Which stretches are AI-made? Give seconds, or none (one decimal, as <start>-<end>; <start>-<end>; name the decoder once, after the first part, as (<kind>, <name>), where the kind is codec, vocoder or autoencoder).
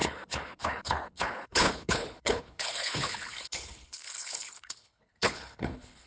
0.0-6.1 (codec, HILCodec)